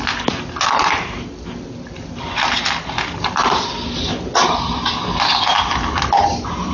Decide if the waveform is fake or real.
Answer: real